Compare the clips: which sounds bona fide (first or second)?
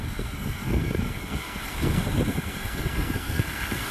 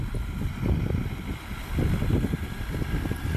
second